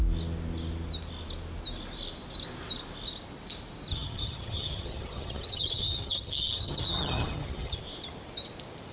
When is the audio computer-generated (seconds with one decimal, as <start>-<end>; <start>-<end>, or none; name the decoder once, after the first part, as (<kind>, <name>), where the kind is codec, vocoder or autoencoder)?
3.9-7.8 (vocoder, HiFi-GAN)